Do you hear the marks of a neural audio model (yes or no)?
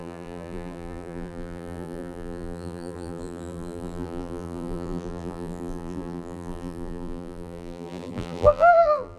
yes